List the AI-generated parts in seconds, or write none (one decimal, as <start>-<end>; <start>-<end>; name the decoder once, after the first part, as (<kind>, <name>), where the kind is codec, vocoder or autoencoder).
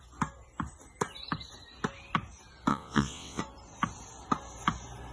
2.7-3.4 (vocoder, WaveNeXt)